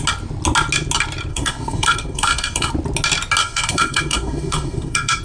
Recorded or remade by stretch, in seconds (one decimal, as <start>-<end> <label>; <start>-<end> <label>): 0.0-1.3 recorded; 1.3-2.7 remade; 2.7-3.4 recorded; 3.4-5.2 remade